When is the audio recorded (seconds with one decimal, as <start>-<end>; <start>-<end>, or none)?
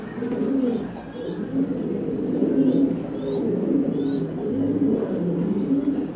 0.0-6.2